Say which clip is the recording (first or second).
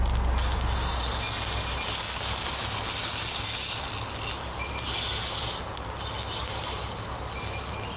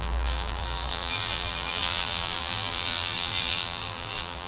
first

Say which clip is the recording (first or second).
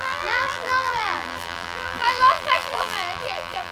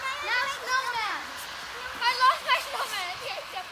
second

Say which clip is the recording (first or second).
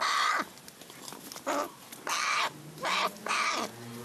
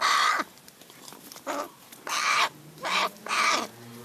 first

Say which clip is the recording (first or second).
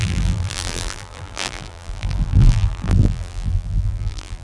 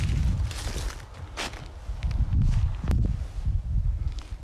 second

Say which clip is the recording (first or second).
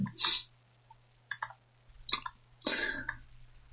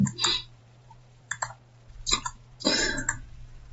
first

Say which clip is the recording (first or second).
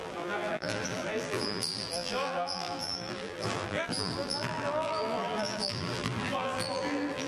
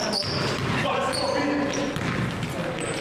second